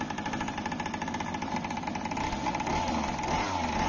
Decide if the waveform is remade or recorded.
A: recorded